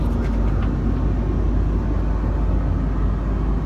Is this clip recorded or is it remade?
recorded